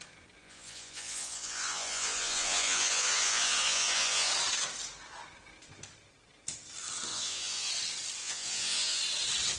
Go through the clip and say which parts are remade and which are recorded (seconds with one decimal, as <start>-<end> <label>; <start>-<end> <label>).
0.0-0.4 recorded; 0.4-4.3 remade; 4.3-7.1 recorded; 7.1-7.7 remade; 7.7-8.2 recorded; 8.2-9.0 remade; 9.0-9.6 recorded